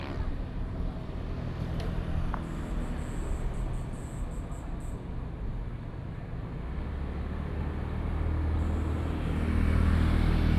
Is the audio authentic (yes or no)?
yes